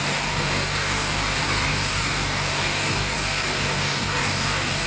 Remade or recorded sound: remade